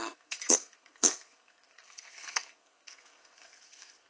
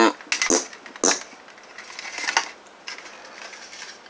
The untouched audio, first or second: second